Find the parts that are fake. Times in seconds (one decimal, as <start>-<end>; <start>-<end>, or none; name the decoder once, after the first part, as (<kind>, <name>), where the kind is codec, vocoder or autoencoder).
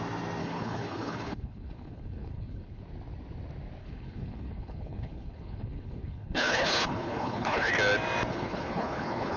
0.4-2.8 (codec, HILCodec); 3.8-7.7; 8.3-9.4